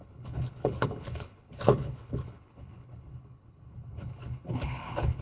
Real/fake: fake